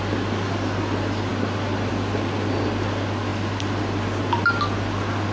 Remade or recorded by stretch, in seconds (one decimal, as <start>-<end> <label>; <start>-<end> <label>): 0.0-5.3 recorded